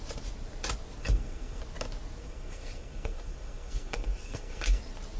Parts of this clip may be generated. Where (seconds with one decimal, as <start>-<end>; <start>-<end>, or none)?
1.0-1.6; 2.2-4.8